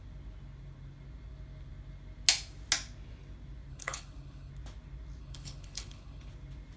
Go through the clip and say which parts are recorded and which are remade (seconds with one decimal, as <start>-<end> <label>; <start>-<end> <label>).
0.0-3.7 recorded; 3.7-4.5 remade; 4.5-5.2 recorded; 5.2-6.3 remade; 6.3-6.8 recorded